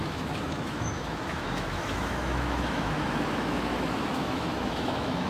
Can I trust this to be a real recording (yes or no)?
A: no